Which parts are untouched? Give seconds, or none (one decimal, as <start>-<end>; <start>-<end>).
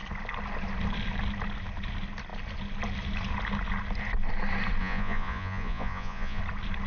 0.0-4.8; 6.4-6.9